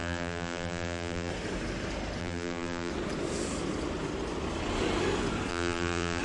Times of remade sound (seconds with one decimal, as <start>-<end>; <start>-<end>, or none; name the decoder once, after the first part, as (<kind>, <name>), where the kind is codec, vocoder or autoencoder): 0.0-1.3 (vocoder, BigVGAN v2); 2.2-2.9; 5.5-6.2